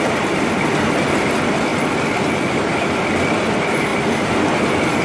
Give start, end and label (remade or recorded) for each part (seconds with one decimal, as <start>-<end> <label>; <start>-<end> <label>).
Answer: 0.0-5.0 recorded